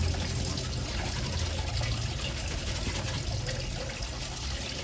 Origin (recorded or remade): recorded